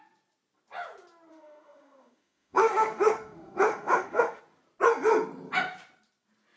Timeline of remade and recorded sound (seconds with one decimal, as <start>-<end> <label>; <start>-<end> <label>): 0.0-1.3 recorded; 1.3-4.4 remade; 4.4-6.6 recorded